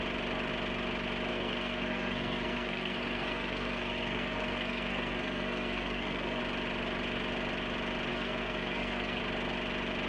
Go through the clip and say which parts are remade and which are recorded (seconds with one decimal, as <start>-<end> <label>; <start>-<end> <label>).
0.0-1.3 recorded; 1.3-6.4 remade; 6.4-8.1 recorded; 8.1-9.2 remade; 9.2-10.1 recorded